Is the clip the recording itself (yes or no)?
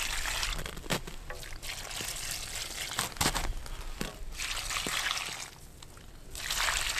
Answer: yes